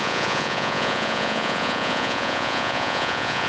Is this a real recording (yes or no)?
no